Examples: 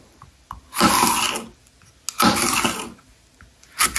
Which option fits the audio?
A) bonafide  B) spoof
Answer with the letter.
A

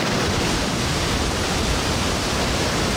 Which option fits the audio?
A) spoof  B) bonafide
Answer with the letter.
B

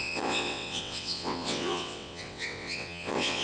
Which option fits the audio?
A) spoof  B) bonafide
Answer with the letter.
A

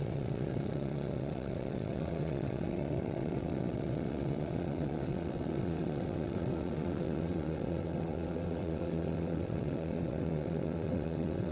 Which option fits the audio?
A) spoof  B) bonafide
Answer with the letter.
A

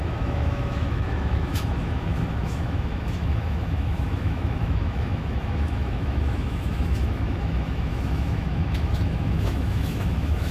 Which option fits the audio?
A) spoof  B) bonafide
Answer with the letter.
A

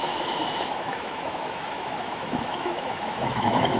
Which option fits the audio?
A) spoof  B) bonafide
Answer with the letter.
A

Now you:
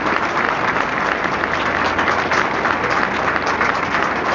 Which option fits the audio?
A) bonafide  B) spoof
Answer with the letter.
A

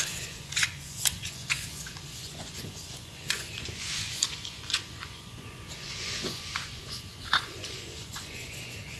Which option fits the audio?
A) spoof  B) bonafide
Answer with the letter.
A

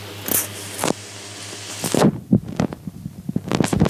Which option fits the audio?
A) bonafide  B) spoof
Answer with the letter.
A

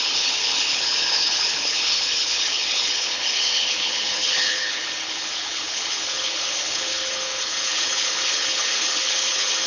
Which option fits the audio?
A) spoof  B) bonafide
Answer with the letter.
A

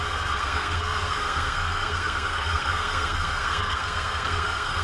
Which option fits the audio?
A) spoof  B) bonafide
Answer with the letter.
A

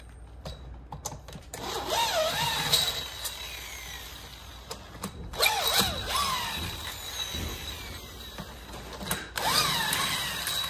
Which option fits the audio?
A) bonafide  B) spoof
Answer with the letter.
A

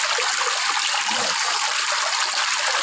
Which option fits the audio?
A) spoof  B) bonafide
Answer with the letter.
B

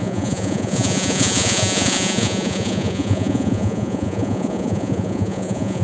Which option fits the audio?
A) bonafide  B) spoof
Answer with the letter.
B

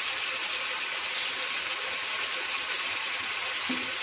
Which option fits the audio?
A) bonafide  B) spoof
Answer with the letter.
A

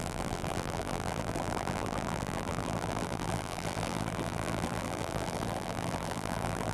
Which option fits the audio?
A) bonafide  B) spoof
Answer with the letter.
B